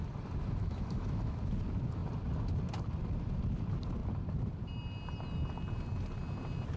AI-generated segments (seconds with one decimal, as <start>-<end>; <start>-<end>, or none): 0.6-1.4